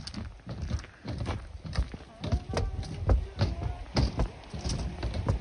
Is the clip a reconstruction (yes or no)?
no